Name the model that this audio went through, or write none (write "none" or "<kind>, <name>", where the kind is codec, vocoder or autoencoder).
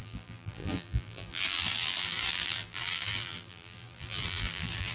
vocoder, BigVGAN v2